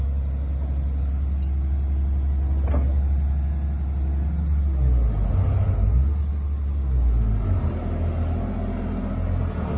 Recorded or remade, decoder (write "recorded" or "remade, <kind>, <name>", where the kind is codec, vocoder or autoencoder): recorded